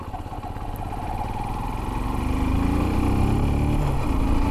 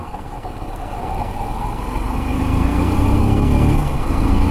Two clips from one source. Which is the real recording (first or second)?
first